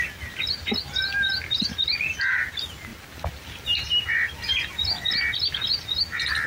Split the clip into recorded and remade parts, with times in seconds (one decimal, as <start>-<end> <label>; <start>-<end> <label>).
0.0-2.9 recorded; 2.9-4.7 remade; 4.7-6.5 recorded